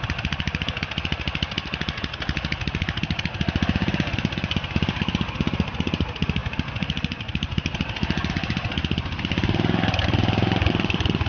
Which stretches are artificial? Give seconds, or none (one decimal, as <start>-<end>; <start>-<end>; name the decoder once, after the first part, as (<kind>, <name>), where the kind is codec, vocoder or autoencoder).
none